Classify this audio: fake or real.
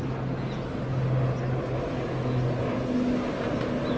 real